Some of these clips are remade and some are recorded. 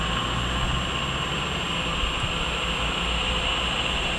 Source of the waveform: recorded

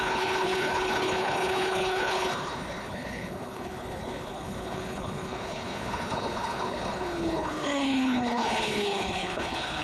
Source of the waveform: remade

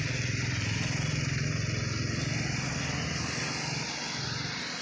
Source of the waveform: recorded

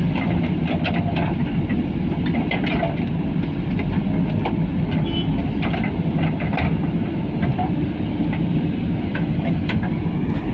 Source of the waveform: recorded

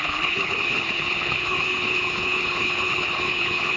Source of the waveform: remade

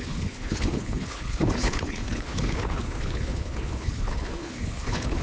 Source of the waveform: remade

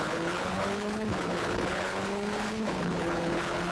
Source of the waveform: remade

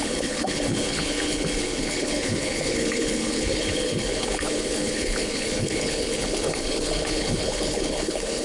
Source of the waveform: remade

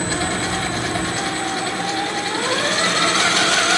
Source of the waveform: recorded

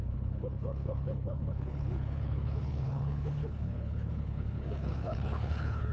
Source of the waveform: remade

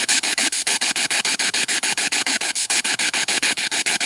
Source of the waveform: remade